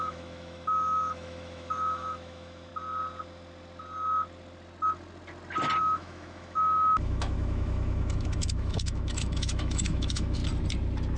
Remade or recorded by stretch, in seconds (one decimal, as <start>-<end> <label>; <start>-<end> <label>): 0.0-2.7 remade; 2.7-5.8 recorded; 5.8-10.4 remade; 10.4-11.2 recorded